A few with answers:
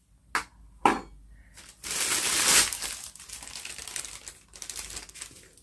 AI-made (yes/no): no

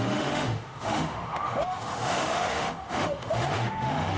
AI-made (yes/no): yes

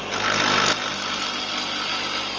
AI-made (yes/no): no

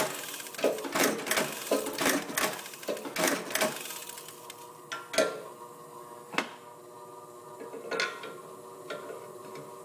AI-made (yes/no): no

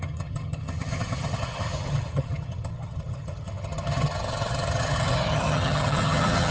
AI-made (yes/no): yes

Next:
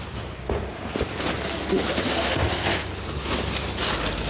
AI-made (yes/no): no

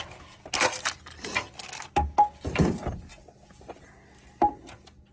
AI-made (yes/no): no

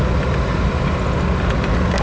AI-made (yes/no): no